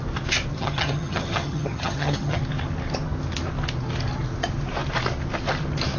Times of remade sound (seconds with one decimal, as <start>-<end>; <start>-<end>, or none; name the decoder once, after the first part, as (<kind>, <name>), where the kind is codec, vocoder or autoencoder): 0.5-2.4 (vocoder, HiFi-GAN)